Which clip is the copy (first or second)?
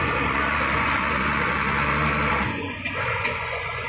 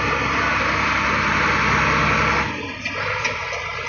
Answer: first